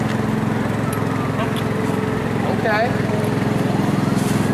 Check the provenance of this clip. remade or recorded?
recorded